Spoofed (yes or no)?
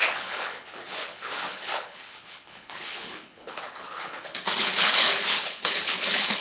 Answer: yes